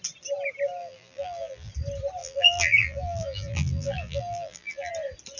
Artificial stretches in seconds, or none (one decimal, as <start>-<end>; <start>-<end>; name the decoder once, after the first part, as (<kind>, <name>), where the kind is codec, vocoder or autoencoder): 0.8-1.7 (vocoder, BigVGAN v2); 2.2-4.9